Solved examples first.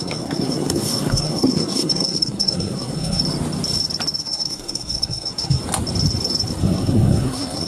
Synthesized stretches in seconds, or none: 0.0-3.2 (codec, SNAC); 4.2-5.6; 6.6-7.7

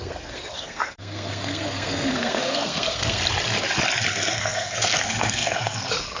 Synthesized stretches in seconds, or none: 0.0-3.2 (codec, SNAC); 4.1-6.2